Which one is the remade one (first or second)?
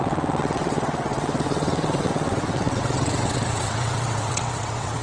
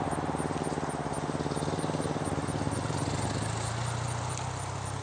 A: first